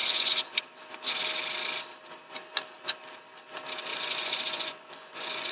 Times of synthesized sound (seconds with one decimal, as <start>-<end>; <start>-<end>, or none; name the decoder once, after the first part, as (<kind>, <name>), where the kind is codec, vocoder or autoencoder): 0.0-0.6 (vocoder, Vocos); 3.9-5.5